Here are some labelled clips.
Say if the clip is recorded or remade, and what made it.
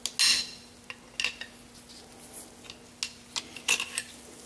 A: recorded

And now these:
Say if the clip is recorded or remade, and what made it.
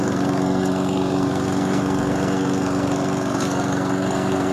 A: remade, codec, SNAC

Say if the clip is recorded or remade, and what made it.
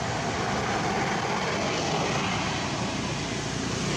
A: recorded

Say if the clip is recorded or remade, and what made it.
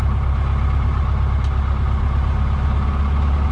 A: recorded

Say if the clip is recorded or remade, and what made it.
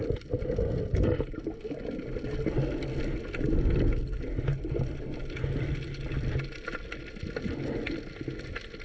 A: recorded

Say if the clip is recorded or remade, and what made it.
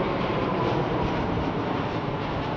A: remade, vocoder, BigVGAN v2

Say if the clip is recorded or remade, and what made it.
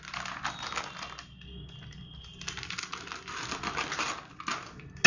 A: recorded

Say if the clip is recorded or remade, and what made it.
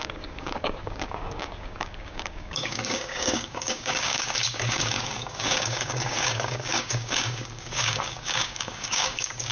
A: remade, codec, DAC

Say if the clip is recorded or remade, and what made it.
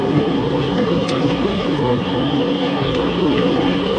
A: remade, codec, SNAC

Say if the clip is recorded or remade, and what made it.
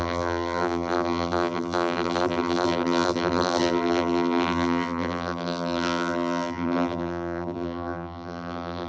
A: remade, vocoder, BigVGAN v2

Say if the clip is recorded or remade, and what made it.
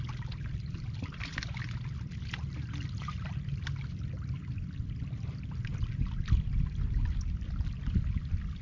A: recorded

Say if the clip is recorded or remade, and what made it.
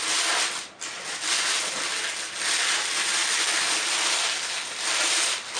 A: recorded